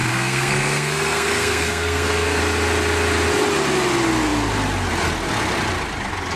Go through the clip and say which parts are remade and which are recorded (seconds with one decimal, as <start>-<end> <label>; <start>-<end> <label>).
0.0-2.4 remade; 2.4-6.4 recorded